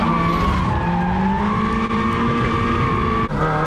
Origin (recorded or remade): recorded